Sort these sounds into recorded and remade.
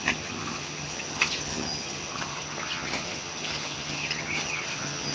remade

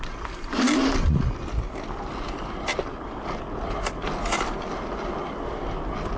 recorded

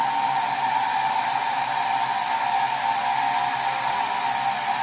recorded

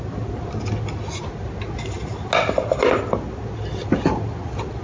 recorded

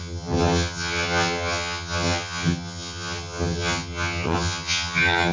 remade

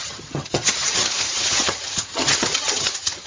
remade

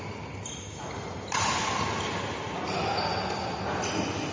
recorded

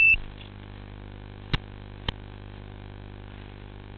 recorded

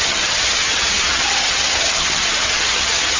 remade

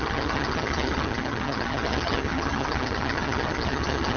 remade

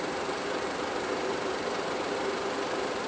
recorded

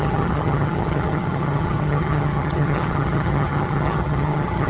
remade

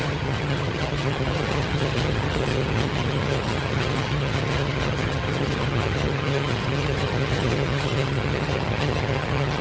remade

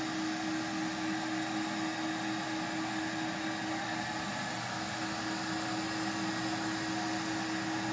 recorded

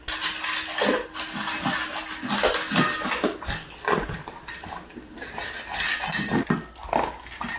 recorded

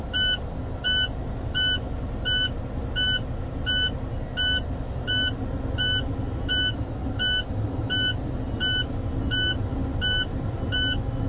recorded